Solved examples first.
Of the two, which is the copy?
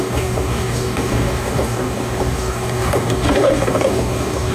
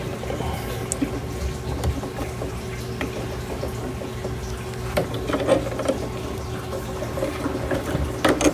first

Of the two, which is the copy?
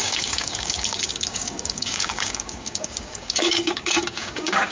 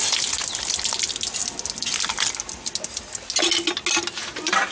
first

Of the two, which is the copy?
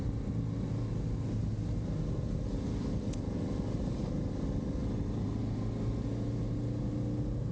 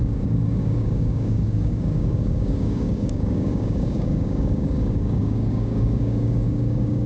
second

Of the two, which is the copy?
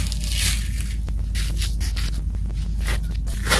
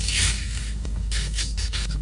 second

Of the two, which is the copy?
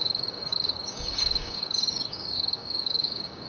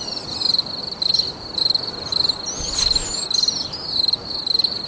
first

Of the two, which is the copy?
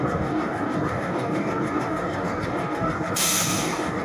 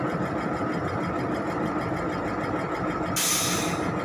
first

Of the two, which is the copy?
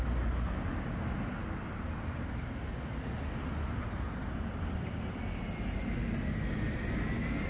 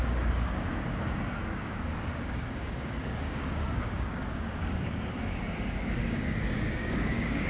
second